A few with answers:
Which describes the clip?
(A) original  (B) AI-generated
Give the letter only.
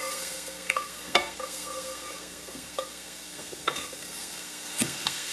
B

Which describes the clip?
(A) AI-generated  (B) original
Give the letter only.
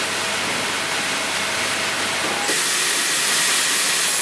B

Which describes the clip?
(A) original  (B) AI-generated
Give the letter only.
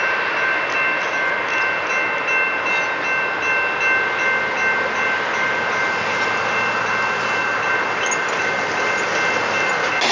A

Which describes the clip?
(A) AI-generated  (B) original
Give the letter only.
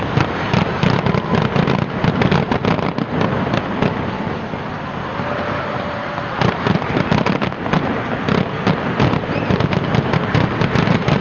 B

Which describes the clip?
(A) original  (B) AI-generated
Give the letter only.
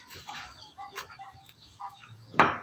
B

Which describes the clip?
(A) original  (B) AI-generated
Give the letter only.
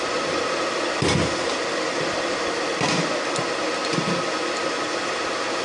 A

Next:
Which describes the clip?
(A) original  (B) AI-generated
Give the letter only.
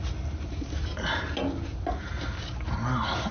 A